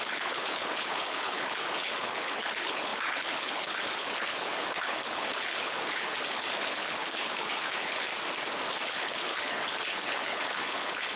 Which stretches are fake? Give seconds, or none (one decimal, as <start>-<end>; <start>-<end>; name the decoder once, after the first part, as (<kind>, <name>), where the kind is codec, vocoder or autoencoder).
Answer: 0.0-8.1 (codec, HILCodec); 8.7-11.2